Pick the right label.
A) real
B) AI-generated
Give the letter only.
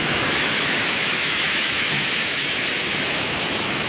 B